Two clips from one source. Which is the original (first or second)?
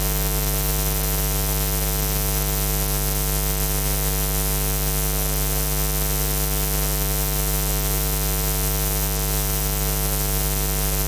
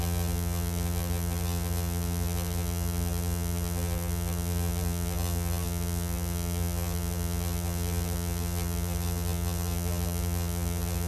first